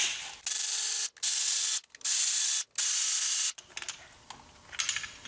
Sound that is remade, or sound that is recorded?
recorded